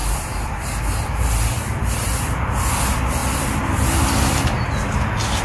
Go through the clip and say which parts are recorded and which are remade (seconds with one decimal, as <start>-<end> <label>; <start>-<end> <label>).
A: 0.0-2.3 remade; 2.3-3.2 recorded; 3.2-4.1 remade; 4.1-5.4 recorded